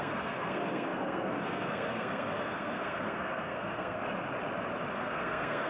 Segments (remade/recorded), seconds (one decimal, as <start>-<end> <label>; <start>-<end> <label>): 0.0-4.0 remade; 4.0-4.9 recorded; 4.9-5.7 remade

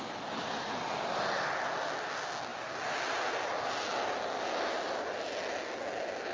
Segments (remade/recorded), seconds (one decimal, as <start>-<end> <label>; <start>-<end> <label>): 0.0-6.3 recorded

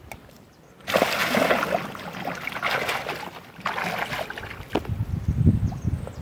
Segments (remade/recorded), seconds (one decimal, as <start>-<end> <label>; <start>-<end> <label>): 0.0-6.2 recorded

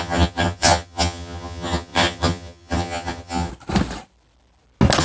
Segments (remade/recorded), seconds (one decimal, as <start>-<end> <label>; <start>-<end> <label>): 0.0-3.5 remade; 3.5-5.0 recorded

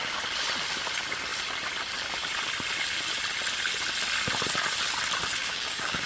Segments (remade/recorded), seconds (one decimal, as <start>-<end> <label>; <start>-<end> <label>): 0.0-5.4 recorded; 5.4-6.1 remade

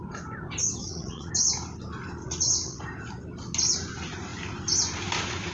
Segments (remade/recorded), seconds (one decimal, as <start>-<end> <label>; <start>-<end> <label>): 0.0-0.8 recorded; 0.8-1.3 remade; 1.3-2.2 recorded; 2.2-2.8 remade; 2.8-5.5 recorded

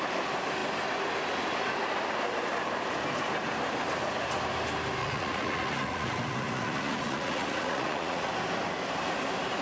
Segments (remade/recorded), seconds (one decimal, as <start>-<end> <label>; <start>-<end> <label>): 0.0-5.0 recorded; 5.0-8.3 remade; 8.3-9.6 recorded